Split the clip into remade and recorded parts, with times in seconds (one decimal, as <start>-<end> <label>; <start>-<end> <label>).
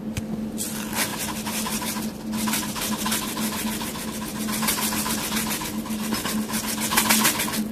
0.0-1.1 recorded; 1.1-5.1 remade; 5.1-7.7 recorded